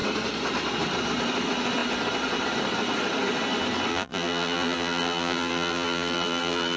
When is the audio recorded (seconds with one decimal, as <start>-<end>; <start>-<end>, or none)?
0.0-3.9